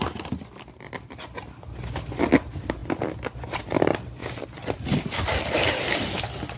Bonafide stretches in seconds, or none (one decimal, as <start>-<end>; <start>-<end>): 0.0-6.6